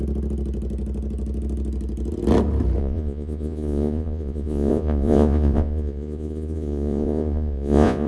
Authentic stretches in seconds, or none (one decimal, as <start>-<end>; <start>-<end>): 0.0-2.8